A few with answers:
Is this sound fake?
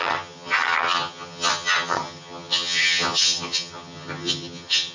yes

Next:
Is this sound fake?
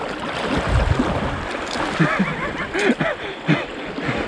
no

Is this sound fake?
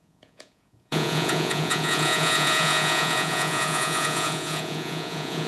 yes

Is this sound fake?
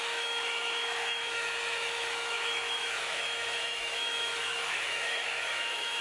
yes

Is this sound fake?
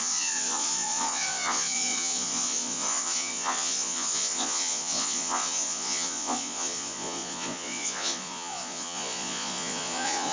yes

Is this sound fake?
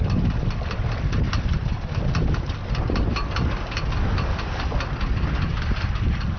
no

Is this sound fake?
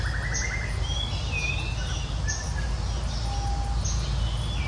no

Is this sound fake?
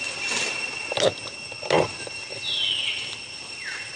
no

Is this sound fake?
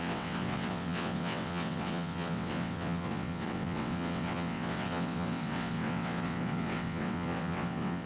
yes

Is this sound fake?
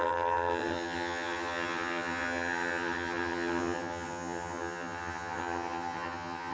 yes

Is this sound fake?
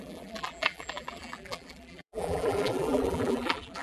yes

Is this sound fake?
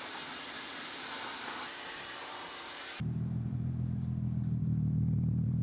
yes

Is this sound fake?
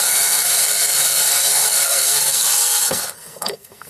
yes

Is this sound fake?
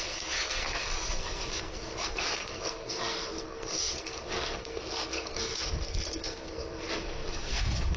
yes